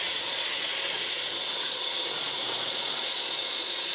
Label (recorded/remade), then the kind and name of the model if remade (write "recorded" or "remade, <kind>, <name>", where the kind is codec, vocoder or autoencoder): remade, vocoder, Vocos